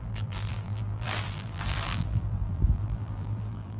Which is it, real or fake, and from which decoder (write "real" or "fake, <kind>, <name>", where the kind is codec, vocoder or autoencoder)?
fake, vocoder, BigVGAN v2